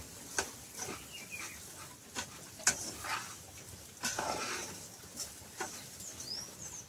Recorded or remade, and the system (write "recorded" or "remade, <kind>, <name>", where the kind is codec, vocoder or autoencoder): recorded